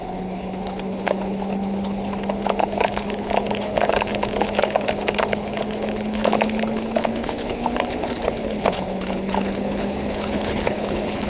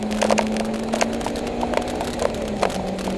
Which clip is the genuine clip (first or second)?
second